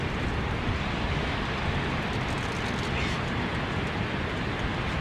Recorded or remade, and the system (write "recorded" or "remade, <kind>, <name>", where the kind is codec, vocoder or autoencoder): recorded